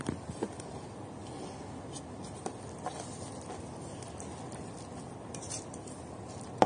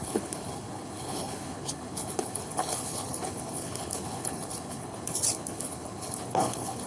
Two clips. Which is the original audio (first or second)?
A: first